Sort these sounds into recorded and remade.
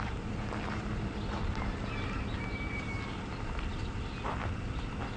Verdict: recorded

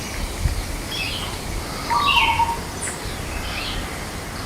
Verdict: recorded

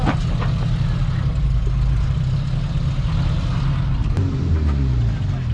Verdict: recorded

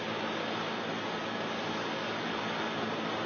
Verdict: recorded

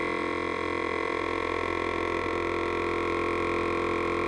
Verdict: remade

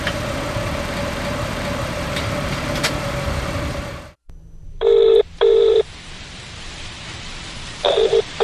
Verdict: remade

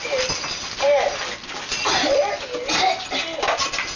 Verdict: recorded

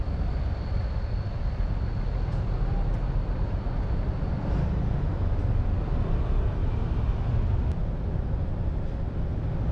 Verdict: recorded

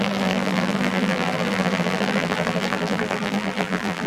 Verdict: remade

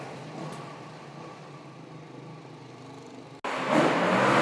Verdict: recorded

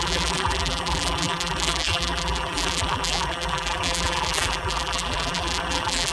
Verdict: remade